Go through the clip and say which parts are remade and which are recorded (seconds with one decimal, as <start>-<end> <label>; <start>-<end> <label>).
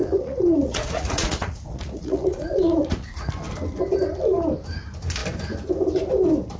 0.0-3.3 remade; 3.3-6.6 recorded